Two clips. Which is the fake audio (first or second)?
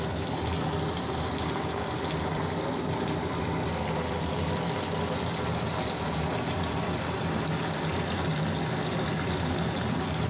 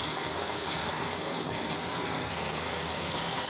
second